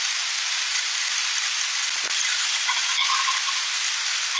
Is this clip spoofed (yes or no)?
yes